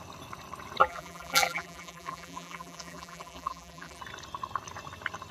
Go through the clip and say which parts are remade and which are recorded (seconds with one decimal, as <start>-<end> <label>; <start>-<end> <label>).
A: 0.0-0.8 recorded; 0.8-4.0 remade; 4.0-5.3 recorded